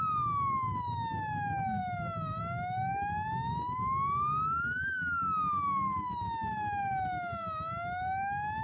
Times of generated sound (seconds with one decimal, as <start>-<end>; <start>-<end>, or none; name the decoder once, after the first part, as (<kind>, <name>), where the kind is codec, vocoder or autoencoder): none